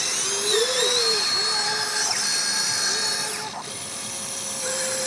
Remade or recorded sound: recorded